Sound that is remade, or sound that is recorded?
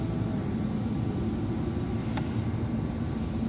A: recorded